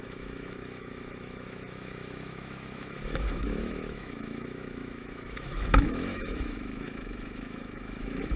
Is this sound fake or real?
fake